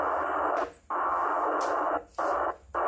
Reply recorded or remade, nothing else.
recorded